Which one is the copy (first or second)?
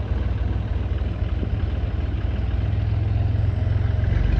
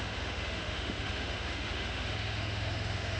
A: second